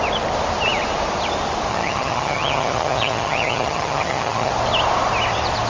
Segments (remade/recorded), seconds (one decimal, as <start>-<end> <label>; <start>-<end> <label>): 0.0-1.7 recorded; 1.7-4.5 remade; 4.5-5.7 recorded